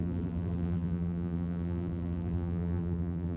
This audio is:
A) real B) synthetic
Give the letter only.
B